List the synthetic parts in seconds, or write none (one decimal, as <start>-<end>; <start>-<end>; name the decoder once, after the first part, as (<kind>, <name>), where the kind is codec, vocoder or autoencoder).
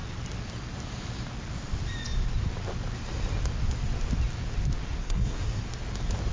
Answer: 5.0-5.6 (codec, SNAC)